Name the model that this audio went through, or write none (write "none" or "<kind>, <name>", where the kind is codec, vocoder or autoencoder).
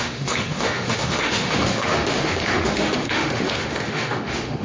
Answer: autoencoder, DAC-VAE